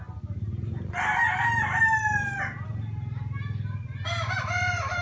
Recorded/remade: recorded